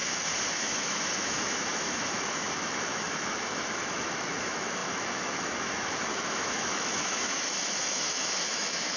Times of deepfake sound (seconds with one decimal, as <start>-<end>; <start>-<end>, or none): 0.5-9.0